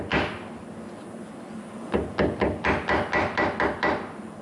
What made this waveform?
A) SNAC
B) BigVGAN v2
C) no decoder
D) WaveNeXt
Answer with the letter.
C